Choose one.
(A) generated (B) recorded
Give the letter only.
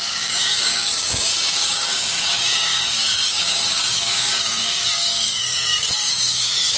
A